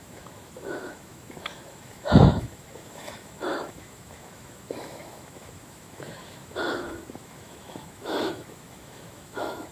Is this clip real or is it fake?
fake